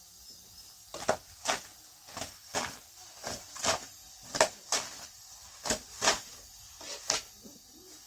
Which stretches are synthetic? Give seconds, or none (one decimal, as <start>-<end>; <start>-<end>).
none